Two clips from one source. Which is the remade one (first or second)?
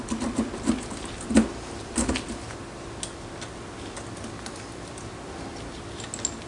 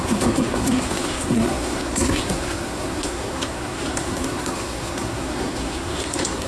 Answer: second